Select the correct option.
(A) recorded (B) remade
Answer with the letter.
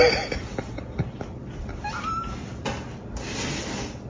A